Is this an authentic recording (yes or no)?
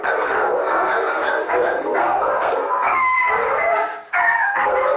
no